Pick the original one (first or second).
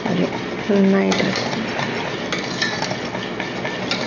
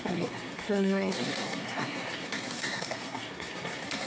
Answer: first